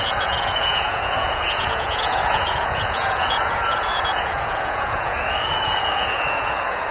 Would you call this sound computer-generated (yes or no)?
yes